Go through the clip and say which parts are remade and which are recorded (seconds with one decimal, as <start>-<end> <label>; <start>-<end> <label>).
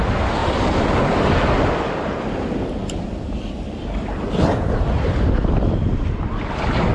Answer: 0.0-2.8 recorded; 2.8-6.9 remade